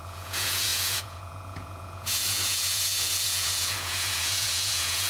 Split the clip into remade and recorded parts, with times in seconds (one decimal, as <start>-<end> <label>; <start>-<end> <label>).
0.0-5.1 remade